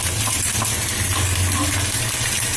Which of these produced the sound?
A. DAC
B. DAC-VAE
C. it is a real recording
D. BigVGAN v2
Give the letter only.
C